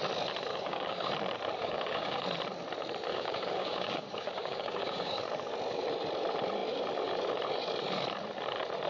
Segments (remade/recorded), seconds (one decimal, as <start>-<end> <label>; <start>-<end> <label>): 0.0-0.5 recorded; 0.5-1.1 remade; 1.1-1.6 recorded; 1.6-2.2 remade; 2.2-3.1 recorded; 3.1-5.2 remade; 5.2-8.9 recorded